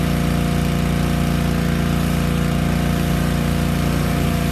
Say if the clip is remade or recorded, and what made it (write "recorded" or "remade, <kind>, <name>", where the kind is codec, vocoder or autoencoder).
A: recorded